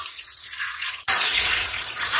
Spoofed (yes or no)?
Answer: yes